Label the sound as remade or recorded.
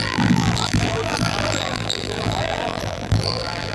remade